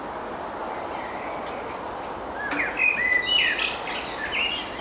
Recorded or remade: recorded